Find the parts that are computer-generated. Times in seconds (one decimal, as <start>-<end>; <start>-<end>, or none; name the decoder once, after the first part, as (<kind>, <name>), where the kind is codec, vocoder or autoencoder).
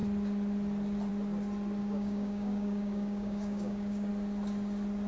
1.8-4.1 (codec, DAC)